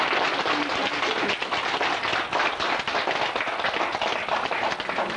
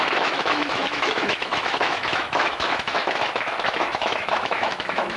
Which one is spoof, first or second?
second